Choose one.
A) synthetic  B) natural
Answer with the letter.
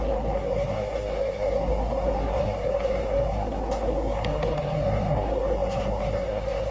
A